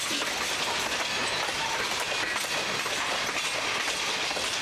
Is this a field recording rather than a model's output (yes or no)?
yes